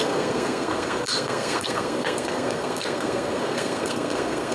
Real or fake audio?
fake